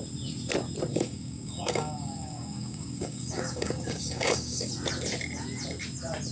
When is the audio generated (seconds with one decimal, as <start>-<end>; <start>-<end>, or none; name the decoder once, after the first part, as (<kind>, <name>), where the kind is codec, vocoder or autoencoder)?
0.9-4.7 (codec, DAC)